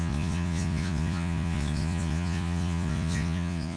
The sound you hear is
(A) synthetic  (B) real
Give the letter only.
A